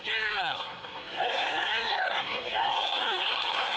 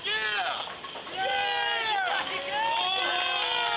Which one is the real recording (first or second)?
second